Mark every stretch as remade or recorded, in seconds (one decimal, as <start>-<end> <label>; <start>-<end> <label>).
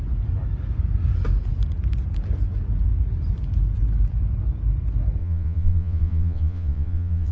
0.0-5.2 recorded; 5.2-7.3 remade